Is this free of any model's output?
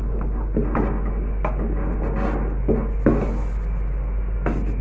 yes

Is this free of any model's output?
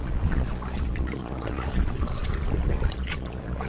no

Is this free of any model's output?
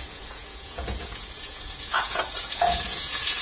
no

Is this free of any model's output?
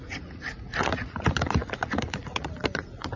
no